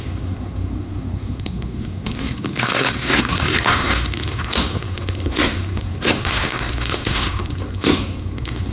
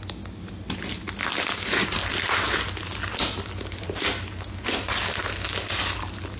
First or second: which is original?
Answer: second